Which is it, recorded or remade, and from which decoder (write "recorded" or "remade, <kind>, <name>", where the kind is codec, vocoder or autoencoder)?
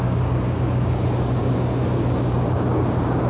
remade, codec, DAC